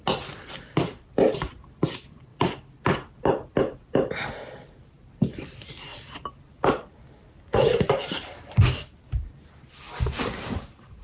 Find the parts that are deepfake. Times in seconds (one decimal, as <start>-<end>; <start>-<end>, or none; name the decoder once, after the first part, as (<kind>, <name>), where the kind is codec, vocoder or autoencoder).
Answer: 0.9-1.9 (vocoder, BigVGAN v2); 2.3-4.1; 5.9-8.6